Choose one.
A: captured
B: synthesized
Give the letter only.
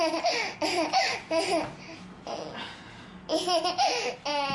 A